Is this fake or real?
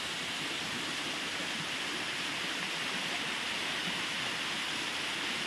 real